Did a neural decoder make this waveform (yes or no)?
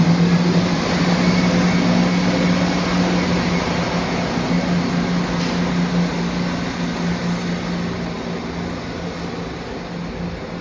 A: no